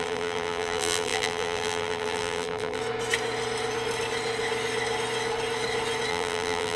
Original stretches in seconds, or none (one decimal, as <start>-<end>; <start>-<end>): 2.8-6.1